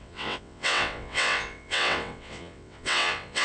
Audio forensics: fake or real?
fake